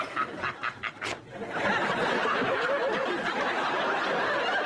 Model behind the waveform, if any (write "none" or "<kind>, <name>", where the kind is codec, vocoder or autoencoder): none